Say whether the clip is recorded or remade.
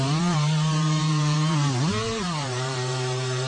remade